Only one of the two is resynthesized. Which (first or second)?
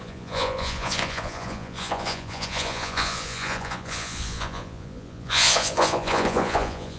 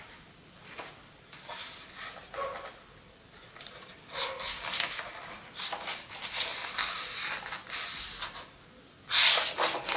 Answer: first